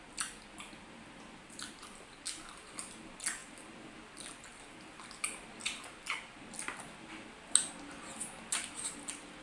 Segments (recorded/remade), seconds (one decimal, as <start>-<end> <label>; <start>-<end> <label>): 0.0-9.4 recorded